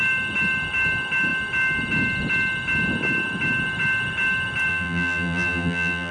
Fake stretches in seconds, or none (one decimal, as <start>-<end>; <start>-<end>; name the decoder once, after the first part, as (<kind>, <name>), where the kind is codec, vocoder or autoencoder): 4.7-6.1 (vocoder, BigVGAN v2)

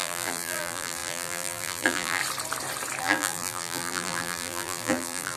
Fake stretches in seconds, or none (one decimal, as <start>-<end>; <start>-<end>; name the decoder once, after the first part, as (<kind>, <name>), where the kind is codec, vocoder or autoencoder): 0.0-2.2 (vocoder, BigVGAN v2); 3.0-5.4